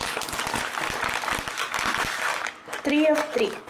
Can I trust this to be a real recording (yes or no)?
yes